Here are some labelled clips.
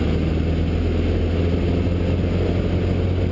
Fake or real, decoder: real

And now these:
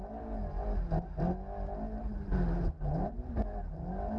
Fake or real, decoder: real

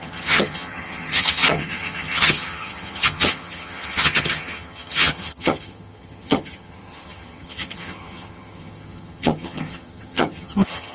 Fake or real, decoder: fake, vocoder, HiFi-GAN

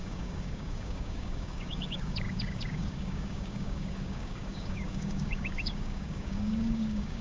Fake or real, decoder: fake, codec, DAC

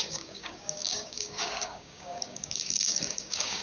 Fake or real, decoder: fake, codec, DAC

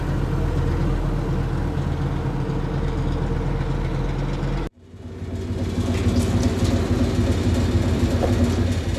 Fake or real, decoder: real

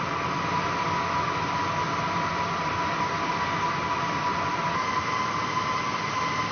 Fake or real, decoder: real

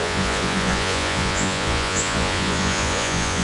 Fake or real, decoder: fake, vocoder, Vocos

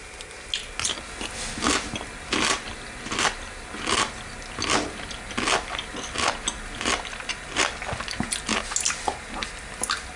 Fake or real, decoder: real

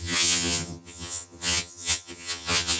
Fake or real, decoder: fake, vocoder, HiFi-GAN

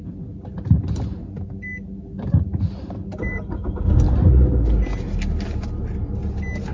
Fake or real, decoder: real